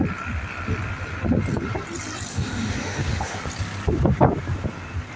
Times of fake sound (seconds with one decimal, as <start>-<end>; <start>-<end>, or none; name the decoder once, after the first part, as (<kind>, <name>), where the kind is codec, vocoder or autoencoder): 2.3-3.4 (autoencoder, DAC-VAE)